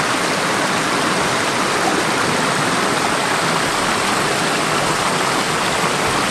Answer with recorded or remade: recorded